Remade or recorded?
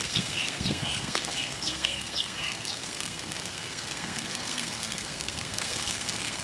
remade